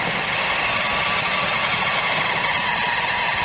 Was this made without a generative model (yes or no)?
yes